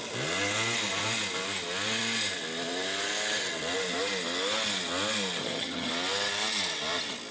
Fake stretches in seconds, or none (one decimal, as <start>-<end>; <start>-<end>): 5.4-5.9